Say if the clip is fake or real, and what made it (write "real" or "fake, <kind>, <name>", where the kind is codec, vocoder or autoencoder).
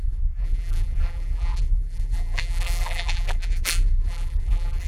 fake, vocoder, BigVGAN v2